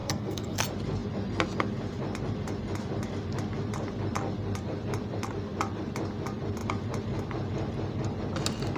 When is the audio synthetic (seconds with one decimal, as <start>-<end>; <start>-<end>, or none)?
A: 0.0-0.6